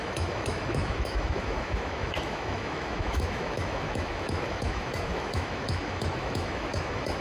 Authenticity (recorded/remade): remade